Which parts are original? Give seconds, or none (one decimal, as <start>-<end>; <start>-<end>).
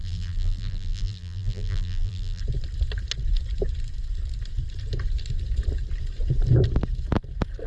2.4-7.7